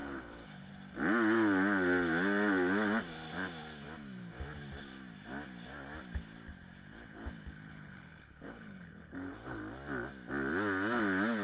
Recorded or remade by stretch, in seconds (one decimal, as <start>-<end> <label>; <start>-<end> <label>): 0.0-0.7 remade; 0.7-6.8 recorded; 6.8-9.6 remade; 9.6-11.4 recorded